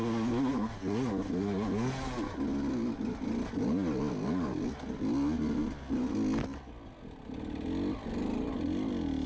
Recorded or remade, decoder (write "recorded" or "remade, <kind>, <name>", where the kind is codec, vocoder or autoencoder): recorded